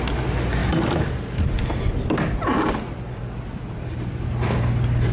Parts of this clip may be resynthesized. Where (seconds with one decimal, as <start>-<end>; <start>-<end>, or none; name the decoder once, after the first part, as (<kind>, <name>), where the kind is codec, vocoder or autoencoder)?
0.6-1.9 (vocoder, BigVGAN v2)